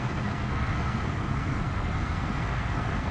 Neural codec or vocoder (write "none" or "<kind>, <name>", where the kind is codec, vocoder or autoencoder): codec, SNAC